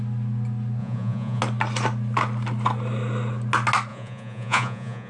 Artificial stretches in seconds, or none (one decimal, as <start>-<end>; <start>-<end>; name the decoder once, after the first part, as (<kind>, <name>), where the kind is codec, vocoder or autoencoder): 0.8-1.4 (vocoder, Vocos); 3.9-5.1